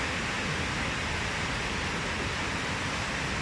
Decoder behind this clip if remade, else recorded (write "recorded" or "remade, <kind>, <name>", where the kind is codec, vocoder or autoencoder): recorded